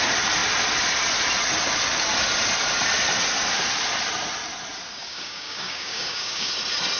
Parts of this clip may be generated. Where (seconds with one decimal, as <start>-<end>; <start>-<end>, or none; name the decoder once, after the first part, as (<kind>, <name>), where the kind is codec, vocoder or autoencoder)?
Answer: 5.0-6.5 (codec, DAC)